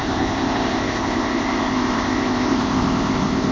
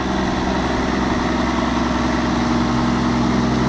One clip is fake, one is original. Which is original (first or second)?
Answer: second